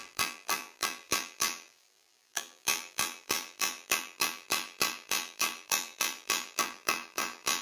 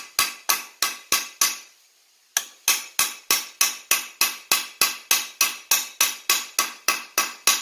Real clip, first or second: second